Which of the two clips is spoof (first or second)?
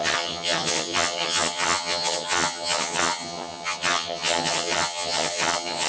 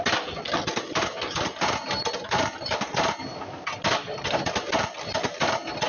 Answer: first